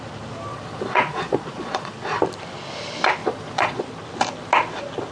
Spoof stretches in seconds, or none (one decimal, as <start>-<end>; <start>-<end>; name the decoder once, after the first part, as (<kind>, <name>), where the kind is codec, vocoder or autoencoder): 0.5-1.9 (vocoder, Vocos); 3.2-3.8